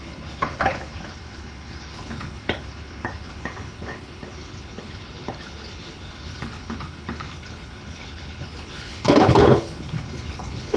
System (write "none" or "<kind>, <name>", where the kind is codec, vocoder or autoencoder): codec, HILCodec